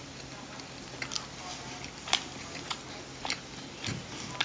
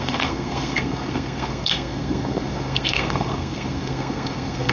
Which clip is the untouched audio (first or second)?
first